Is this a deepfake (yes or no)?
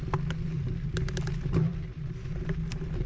no